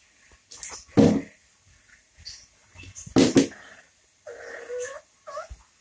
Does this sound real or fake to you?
real